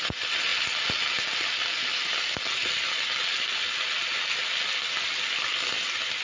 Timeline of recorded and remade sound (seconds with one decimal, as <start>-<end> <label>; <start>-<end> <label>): 0.0-6.2 recorded